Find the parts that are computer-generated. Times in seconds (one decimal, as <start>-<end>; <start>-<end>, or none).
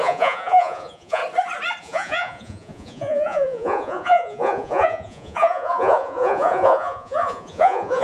0.0-1.2; 1.8-8.0